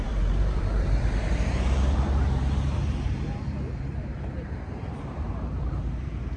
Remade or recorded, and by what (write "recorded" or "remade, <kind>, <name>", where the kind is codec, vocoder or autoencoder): remade, vocoder, BigVGAN v2